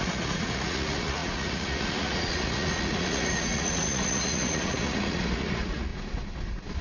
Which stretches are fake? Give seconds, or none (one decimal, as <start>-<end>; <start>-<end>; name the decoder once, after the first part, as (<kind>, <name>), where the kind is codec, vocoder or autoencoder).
0.0-5.9 (vocoder, Vocos)